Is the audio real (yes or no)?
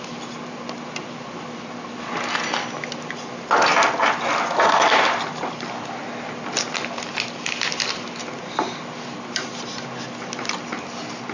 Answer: yes